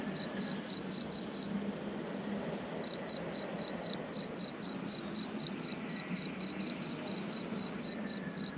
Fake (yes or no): no